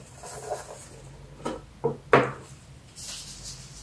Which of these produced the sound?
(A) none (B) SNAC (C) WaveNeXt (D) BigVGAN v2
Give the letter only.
A